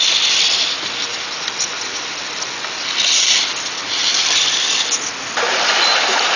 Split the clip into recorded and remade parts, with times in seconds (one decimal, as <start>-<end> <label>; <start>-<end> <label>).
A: 0.0-6.4 recorded